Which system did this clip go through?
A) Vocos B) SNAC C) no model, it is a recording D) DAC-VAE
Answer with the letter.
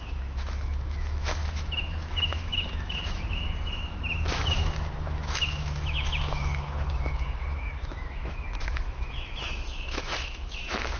D